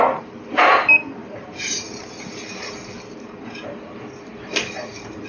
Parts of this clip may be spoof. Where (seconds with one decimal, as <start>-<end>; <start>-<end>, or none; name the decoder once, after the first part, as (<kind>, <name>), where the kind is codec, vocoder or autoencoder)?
1.2-2.1 (vocoder, BigVGAN v2)